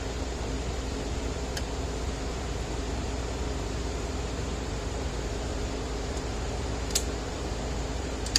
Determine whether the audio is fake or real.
fake